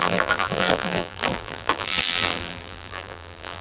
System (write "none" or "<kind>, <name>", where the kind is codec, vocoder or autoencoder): vocoder, BigVGAN v2